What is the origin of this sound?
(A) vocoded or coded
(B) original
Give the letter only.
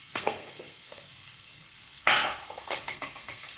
A